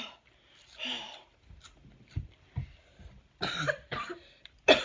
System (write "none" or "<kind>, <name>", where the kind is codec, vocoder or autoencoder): none